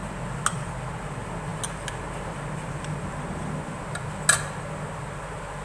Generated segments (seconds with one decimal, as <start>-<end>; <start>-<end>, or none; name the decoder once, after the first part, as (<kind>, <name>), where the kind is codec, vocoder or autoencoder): none